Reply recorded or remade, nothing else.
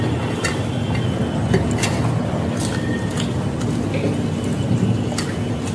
recorded